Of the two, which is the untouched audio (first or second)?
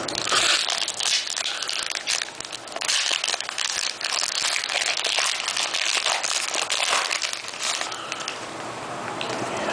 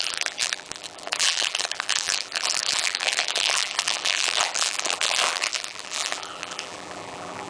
first